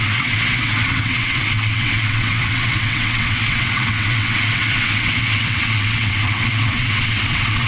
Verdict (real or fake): fake